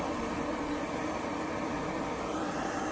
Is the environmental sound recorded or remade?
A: recorded